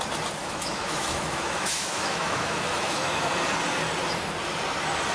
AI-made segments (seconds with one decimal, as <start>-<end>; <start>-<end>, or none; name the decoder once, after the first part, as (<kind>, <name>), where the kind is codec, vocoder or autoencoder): 0.4-3.3 (autoencoder, DAC-VAE)